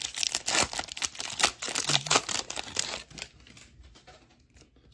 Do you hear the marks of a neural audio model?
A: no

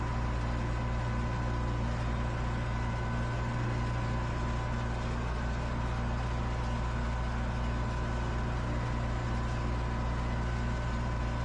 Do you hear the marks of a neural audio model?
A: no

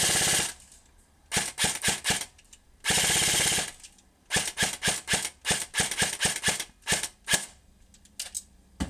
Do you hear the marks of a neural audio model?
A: no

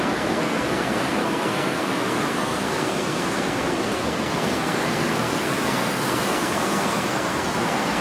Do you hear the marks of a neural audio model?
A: yes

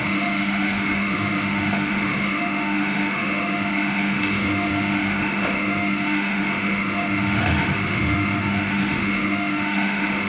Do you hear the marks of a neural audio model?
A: yes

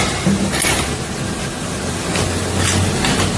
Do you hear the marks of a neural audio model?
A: no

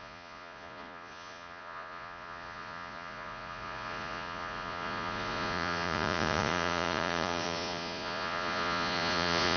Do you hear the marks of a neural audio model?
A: yes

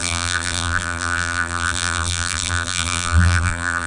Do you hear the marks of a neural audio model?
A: yes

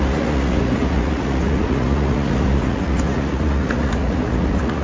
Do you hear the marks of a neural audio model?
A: yes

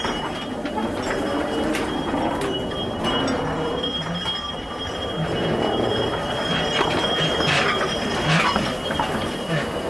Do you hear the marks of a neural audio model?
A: no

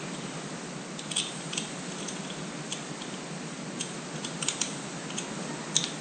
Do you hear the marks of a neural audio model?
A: no